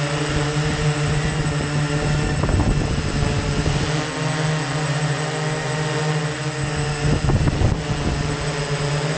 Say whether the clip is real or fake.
real